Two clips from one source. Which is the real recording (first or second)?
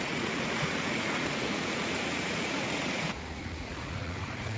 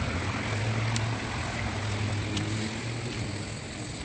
second